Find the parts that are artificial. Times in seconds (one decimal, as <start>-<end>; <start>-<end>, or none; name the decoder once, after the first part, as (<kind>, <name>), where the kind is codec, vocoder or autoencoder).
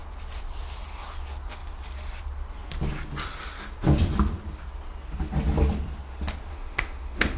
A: 6.5-7.4 (autoencoder, DAC-VAE)